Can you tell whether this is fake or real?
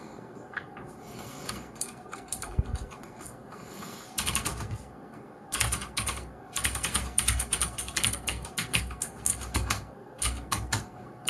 fake